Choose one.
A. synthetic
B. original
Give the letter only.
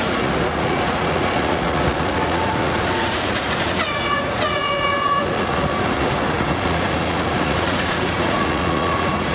A